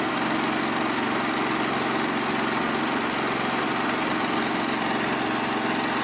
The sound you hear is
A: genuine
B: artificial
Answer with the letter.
A